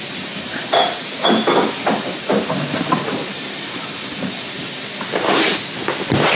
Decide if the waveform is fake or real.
real